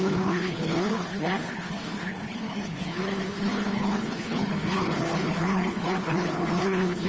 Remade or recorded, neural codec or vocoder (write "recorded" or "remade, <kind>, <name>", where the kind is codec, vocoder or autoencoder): remade, codec, HILCodec